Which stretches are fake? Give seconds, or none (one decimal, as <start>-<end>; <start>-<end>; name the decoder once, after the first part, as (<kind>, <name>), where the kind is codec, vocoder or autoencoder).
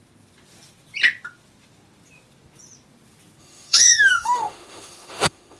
3.4-5.6 (autoencoder, DAC-VAE)